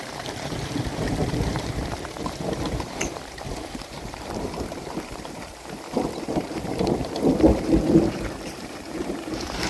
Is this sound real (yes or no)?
no